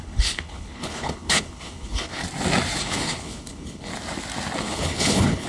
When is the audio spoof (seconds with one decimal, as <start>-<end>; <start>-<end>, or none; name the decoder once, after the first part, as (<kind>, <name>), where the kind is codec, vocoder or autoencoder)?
0.0-2.2 (codec, HILCodec); 2.8-3.9; 4.6-5.5